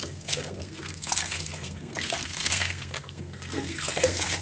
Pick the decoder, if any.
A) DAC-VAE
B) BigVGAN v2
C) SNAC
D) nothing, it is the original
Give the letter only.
C